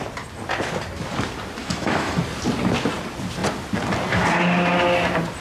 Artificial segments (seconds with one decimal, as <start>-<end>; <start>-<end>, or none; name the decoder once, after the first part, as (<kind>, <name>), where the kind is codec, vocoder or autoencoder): 1.6-2.2 (autoencoder, DAC-VAE)